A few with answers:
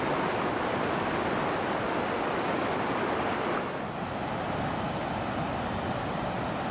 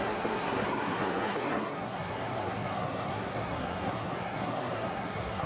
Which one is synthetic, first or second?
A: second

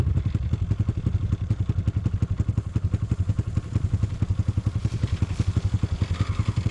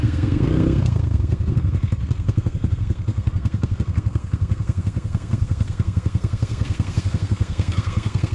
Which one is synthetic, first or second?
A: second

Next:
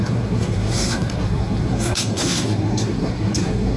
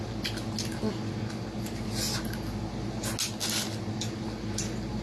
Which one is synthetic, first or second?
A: first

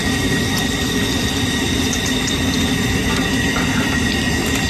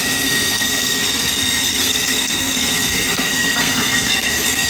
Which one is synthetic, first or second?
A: second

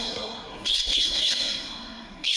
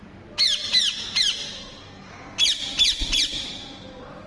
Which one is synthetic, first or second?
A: first